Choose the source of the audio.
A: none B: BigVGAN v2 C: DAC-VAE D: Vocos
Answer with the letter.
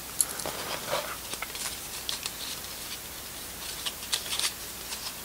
A